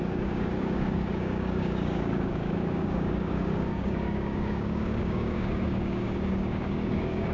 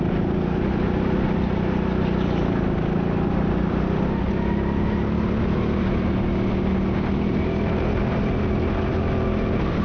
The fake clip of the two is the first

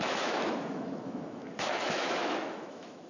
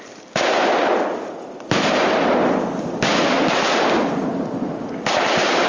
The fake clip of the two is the first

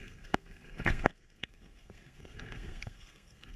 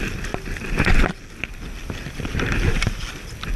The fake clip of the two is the first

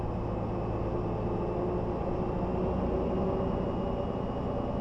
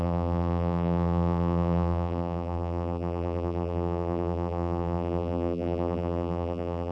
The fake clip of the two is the second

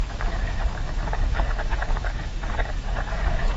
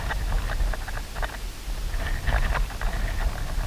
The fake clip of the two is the first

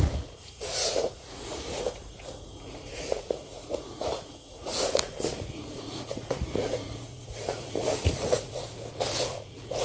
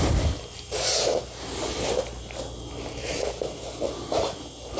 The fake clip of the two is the first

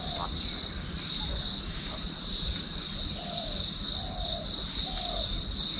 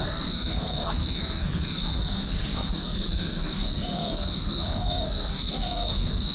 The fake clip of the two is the second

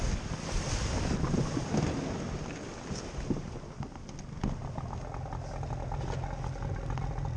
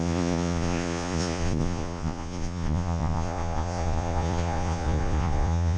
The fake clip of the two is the second